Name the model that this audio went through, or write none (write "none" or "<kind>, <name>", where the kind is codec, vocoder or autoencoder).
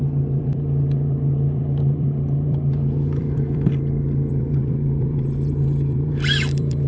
vocoder, BigVGAN v2